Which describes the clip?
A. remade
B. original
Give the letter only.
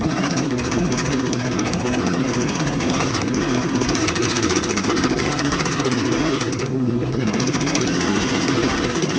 A